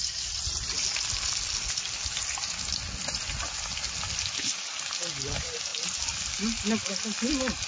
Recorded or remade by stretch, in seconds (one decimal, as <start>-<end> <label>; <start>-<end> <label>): 0.0-7.7 recorded